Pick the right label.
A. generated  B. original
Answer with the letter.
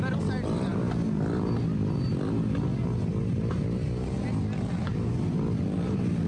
B